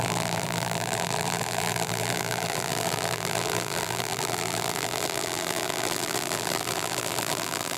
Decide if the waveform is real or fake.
fake